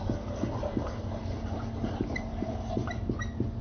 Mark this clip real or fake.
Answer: real